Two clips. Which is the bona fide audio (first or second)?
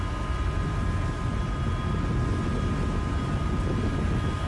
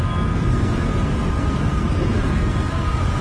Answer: first